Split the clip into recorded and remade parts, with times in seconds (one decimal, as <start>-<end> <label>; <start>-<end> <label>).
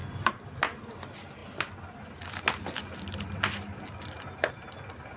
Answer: 0.0-5.2 recorded